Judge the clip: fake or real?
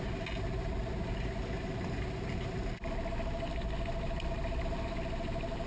real